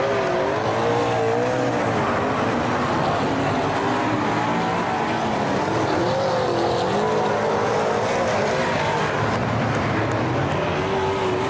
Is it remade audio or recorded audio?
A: recorded